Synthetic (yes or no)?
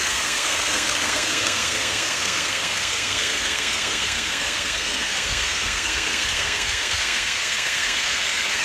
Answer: yes